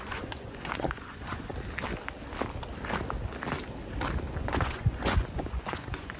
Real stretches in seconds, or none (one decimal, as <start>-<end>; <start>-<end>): 1.5-4.4